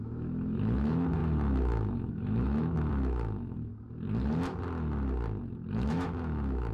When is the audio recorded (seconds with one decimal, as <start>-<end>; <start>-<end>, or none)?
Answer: 3.7-5.7